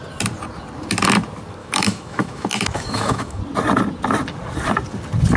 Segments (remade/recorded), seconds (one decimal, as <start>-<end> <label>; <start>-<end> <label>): 0.0-1.6 recorded; 1.6-3.4 remade; 3.4-5.4 recorded